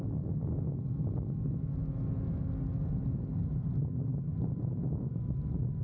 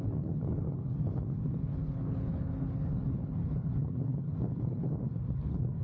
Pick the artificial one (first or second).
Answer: second